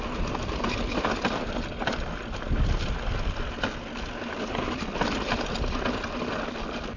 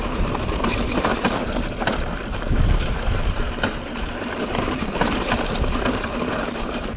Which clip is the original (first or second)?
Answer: first